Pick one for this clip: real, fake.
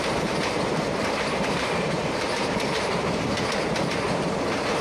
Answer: fake